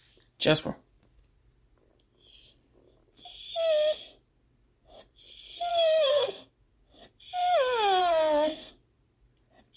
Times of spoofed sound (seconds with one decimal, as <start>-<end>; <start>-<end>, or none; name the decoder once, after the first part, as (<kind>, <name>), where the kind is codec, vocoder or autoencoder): 5.7-6.5 (codec, SNAC); 8.0-8.7